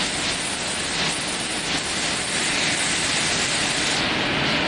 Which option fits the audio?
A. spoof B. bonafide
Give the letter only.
B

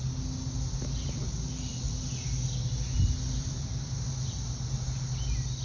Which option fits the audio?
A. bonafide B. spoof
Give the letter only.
A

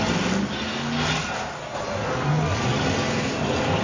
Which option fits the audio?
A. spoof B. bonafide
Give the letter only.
B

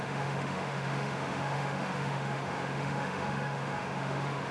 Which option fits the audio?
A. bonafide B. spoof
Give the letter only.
B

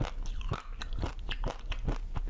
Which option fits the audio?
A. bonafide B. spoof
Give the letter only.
A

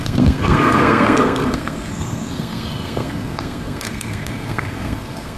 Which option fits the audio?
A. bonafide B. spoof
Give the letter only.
B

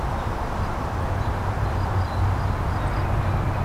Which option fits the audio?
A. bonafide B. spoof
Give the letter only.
A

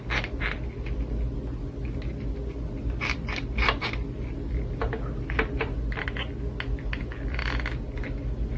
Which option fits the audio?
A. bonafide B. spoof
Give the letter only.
A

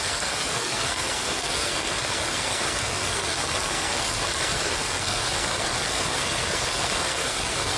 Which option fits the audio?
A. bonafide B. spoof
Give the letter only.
B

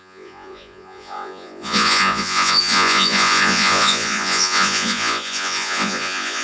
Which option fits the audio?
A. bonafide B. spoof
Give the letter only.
B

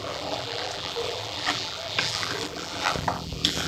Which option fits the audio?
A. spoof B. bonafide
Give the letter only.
A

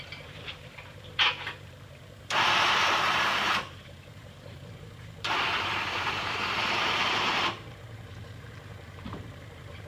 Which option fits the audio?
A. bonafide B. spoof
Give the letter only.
B